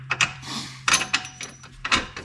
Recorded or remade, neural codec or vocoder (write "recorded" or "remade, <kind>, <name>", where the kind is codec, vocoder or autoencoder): remade, vocoder, BigVGAN v2